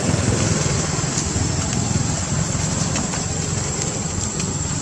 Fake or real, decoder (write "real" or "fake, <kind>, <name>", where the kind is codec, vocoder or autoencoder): fake, vocoder, BigVGAN v2